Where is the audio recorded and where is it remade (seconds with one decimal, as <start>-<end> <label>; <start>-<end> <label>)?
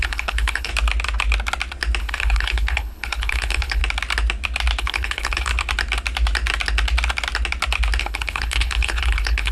0.0-0.7 remade; 0.7-2.0 recorded; 2.0-3.8 remade; 3.8-4.8 recorded; 4.8-5.5 remade; 5.5-8.0 recorded; 8.0-9.5 remade